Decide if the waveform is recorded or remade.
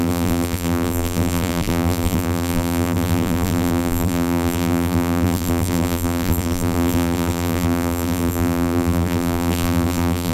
remade